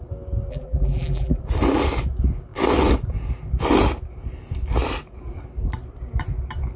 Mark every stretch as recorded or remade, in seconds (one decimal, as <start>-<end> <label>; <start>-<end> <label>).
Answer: 0.0-0.5 recorded; 0.5-1.4 remade; 1.4-6.8 recorded